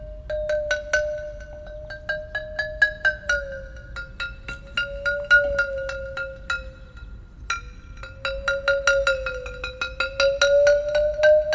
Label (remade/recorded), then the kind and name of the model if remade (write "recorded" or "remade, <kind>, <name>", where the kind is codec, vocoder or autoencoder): recorded